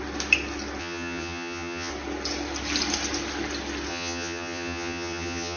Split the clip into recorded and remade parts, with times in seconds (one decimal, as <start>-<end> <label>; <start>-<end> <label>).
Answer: 0.0-0.8 recorded; 0.8-1.9 remade; 1.9-3.9 recorded; 3.9-5.6 remade